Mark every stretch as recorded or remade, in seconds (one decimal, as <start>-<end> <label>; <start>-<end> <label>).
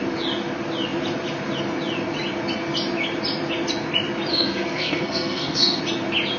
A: 0.0-4.3 recorded; 4.3-5.8 remade; 5.8-6.4 recorded